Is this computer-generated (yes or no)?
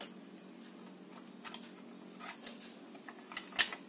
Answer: no